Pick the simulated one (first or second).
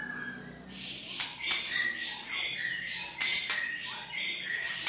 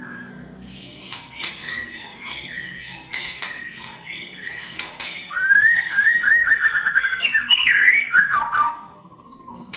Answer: second